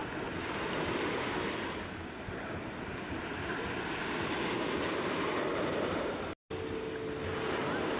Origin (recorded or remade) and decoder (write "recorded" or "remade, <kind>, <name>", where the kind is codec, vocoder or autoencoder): recorded